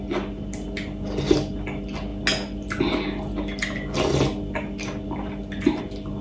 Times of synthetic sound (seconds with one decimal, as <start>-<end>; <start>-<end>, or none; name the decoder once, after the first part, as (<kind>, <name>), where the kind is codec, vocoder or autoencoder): none